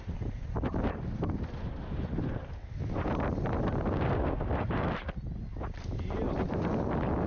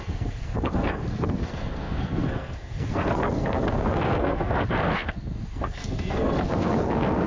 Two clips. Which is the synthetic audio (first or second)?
second